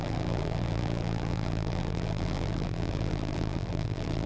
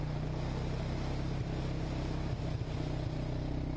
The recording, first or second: second